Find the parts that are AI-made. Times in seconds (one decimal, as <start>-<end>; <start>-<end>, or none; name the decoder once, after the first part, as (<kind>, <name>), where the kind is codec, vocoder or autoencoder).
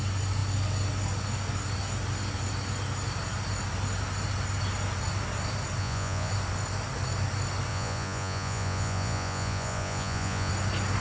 5.8-6.3 (vocoder, Vocos); 7.7-10.5